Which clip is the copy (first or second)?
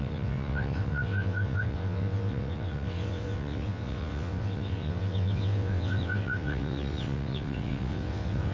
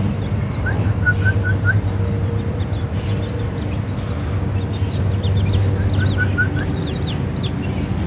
first